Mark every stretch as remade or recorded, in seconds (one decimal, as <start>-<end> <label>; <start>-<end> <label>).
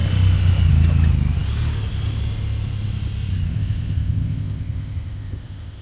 0.0-3.5 recorded; 3.5-5.8 remade